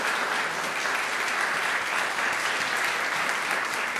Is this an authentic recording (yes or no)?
yes